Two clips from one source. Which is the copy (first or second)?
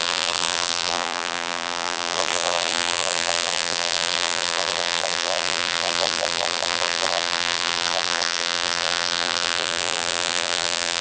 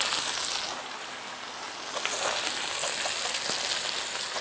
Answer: first